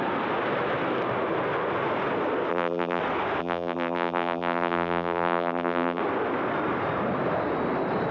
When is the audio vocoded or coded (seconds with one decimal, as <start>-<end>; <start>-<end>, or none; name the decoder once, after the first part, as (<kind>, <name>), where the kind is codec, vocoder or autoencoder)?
2.5-3.0 (vocoder, BigVGAN v2); 3.4-6.0